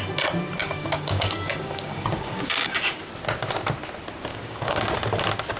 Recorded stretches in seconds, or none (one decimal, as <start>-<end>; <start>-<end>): 0.0-0.6; 3.0-4.3; 4.8-5.6